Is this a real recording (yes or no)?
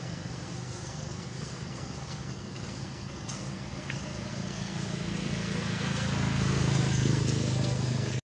no